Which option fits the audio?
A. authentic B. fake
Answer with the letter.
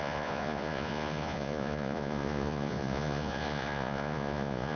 B